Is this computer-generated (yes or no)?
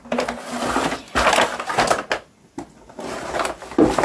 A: no